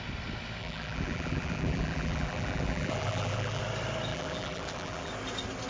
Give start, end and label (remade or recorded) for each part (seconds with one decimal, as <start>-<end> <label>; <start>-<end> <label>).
0.0-0.6 recorded; 0.6-3.6 remade; 3.6-4.1 recorded; 4.1-5.1 remade; 5.1-5.7 recorded